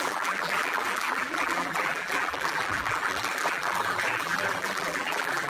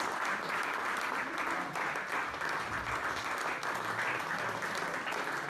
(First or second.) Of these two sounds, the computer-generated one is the first